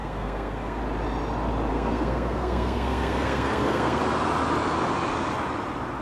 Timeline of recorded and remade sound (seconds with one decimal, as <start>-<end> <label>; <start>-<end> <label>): 0.0-0.8 remade; 0.8-1.7 recorded; 1.7-4.0 remade; 4.0-6.0 recorded